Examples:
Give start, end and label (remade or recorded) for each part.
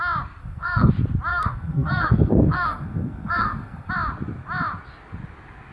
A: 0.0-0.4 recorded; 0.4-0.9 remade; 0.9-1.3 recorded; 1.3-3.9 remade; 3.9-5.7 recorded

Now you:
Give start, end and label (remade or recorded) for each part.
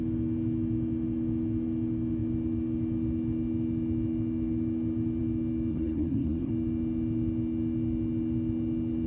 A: 0.0-5.7 recorded; 5.7-6.5 remade; 6.5-9.1 recorded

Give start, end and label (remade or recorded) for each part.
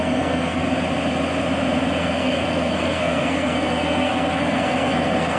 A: 0.0-0.6 remade; 0.6-2.0 recorded; 2.0-5.4 remade